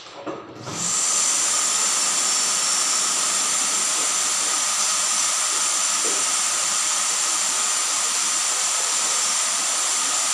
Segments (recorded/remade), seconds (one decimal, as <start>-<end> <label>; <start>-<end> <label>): 0.0-0.7 remade; 0.7-3.2 recorded; 3.2-4.9 remade; 4.9-6.6 recorded; 6.6-10.3 remade